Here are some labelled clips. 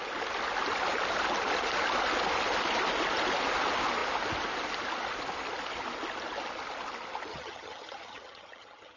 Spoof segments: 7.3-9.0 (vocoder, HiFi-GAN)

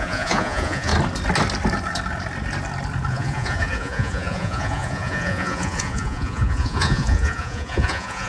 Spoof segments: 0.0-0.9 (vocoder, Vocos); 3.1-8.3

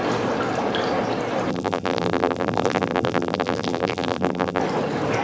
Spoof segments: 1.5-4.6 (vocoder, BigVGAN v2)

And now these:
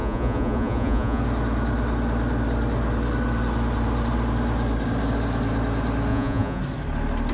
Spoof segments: 0.0-1.2 (vocoder, Vocos); 6.1-6.6

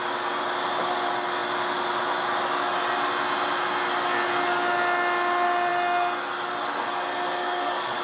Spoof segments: 7.4-8.0 (codec, DAC)